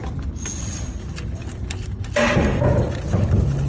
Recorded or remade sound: recorded